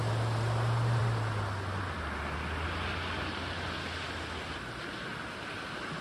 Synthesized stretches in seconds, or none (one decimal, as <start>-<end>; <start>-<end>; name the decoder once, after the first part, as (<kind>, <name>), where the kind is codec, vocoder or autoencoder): none